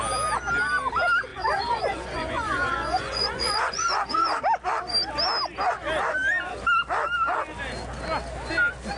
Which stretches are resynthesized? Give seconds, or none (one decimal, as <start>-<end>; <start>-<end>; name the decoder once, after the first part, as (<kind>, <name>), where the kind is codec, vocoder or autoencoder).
1.3-4.4 (vocoder, Vocos)